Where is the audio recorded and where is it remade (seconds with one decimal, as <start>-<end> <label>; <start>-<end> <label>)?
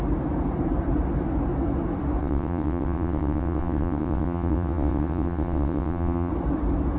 0.0-2.2 recorded; 2.2-6.3 remade; 6.3-7.0 recorded